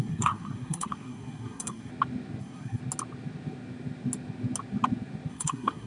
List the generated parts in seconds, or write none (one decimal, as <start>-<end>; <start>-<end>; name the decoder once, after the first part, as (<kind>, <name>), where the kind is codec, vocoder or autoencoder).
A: 0.0-1.9 (codec, SNAC); 2.4-2.8; 5.3-5.9